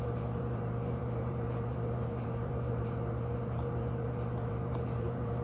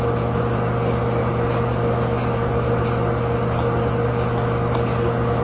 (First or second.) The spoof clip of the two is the first